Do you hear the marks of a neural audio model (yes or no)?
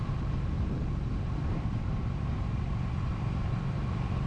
yes